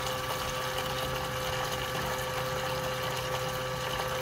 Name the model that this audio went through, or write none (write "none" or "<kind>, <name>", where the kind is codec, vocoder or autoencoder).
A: none